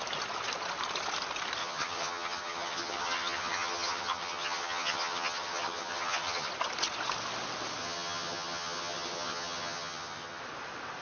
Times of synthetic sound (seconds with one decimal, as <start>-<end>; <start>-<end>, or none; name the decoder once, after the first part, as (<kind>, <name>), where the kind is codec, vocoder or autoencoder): 1.6-6.5 (vocoder, HiFi-GAN); 7.8-10.4